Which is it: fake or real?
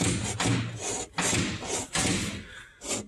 real